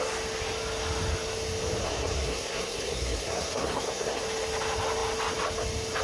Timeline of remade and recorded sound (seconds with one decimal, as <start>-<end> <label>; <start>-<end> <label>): 0.0-1.8 recorded; 1.8-4.2 remade; 4.2-6.0 recorded